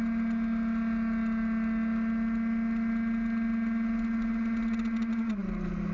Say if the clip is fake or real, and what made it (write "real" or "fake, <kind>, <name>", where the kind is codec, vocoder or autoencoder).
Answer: real